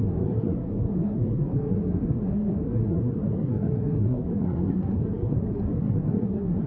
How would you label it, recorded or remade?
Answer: remade